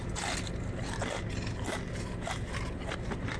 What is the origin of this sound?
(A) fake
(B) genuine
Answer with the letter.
B